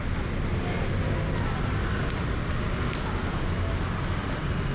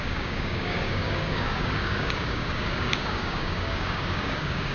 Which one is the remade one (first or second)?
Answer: second